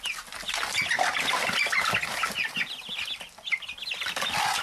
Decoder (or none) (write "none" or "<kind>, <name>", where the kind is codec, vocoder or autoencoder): none